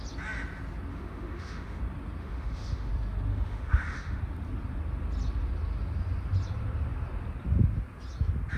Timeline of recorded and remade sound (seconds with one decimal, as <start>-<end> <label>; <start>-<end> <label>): 0.0-0.9 recorded; 0.9-1.8 remade; 1.8-2.2 recorded; 2.2-2.9 remade; 2.9-3.3 recorded; 3.3-4.2 remade; 4.2-8.6 recorded